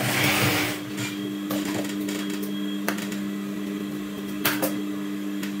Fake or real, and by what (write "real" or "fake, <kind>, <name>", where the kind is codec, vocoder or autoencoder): real